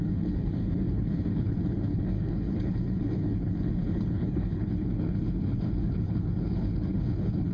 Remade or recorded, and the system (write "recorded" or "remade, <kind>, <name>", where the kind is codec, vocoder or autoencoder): remade, codec, HILCodec